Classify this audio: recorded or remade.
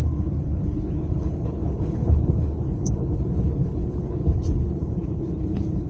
remade